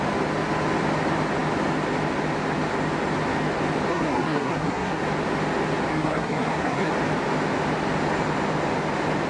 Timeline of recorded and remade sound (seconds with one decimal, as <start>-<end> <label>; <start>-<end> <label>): 0.0-3.9 recorded; 3.9-5.0 remade; 5.0-5.9 recorded; 5.9-6.9 remade; 6.9-9.3 recorded